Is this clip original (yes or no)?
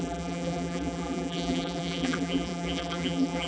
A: no